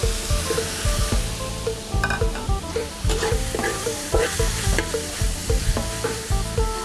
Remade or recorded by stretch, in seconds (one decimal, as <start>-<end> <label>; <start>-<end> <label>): 0.0-2.8 recorded; 2.8-4.2 remade; 4.2-5.4 recorded; 5.4-6.3 remade; 6.3-6.8 recorded